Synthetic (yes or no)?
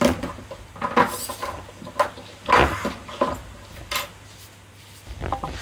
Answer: no